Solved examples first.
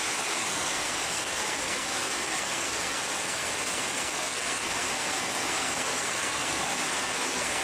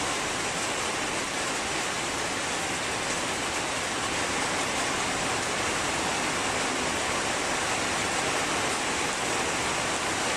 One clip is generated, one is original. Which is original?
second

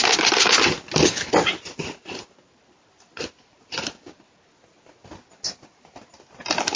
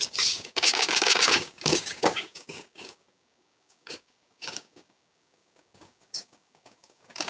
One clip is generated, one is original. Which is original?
first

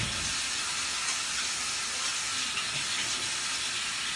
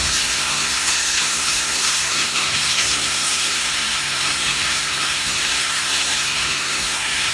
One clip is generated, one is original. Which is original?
first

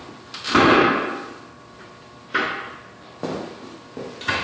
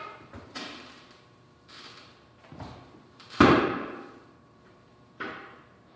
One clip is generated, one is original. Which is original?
first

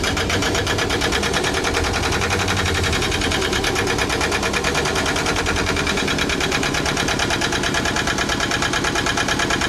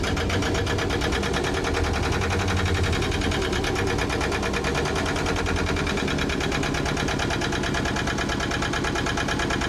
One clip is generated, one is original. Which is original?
second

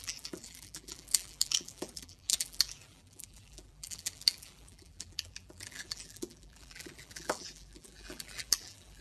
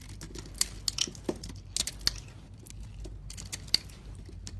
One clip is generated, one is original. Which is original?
second